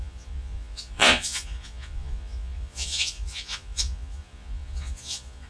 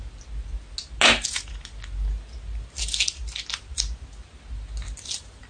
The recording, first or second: second